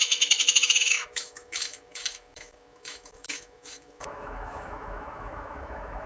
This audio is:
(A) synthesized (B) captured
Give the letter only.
A